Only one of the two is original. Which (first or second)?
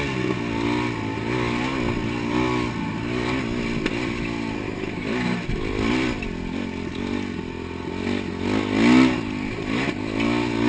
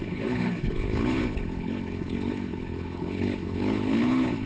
first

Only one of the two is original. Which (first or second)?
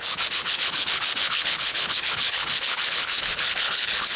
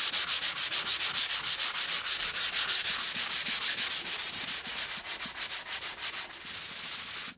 second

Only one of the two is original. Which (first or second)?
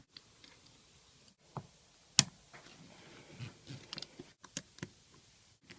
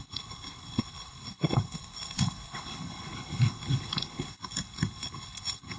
first